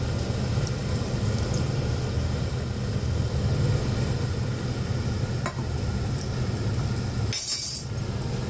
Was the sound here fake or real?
real